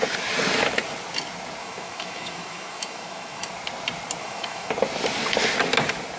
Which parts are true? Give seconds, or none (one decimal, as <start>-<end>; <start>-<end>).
0.0-1.6; 3.5-4.2; 4.7-6.2

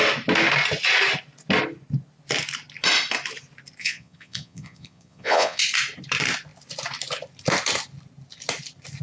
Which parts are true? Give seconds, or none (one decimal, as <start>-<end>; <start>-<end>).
0.0-3.8; 5.6-9.0

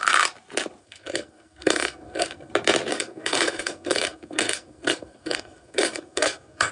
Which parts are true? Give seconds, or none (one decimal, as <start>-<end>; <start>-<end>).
0.0-0.8; 2.5-2.9

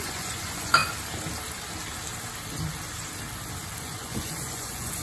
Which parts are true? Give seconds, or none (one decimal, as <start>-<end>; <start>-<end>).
0.8-3.8

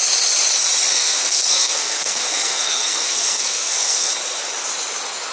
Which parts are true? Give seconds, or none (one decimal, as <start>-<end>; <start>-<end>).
0.0-0.9; 4.1-5.3